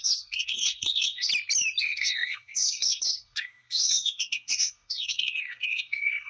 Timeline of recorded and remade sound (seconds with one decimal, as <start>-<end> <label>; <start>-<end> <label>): 0.0-1.3 remade; 1.3-1.8 recorded; 1.8-6.3 remade